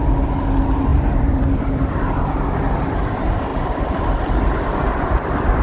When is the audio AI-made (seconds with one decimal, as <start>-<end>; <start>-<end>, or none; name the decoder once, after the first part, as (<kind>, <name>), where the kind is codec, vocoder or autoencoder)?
0.9-1.9 (vocoder, BigVGAN v2); 3.5-4.2